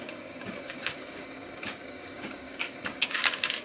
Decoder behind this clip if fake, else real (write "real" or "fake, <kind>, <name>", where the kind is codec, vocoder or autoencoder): fake, codec, DAC